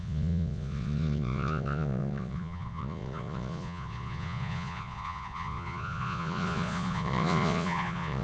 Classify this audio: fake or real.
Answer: fake